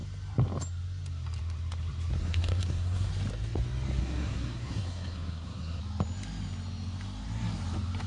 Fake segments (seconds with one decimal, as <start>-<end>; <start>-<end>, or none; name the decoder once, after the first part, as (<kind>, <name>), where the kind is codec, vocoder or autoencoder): 2.2-3.1 (codec, SNAC); 4.0-5.8